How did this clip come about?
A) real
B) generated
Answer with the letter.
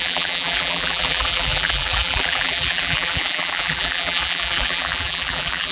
B